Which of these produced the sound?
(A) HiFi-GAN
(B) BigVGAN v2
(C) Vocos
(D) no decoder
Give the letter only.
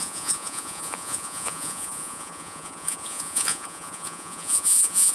C